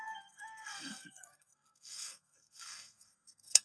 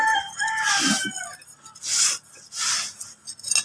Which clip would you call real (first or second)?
second